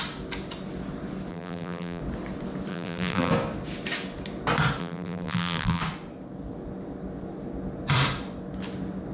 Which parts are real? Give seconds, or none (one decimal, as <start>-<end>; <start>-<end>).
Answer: 0.0-1.3; 2.0-2.7; 3.3-4.8; 5.8-9.1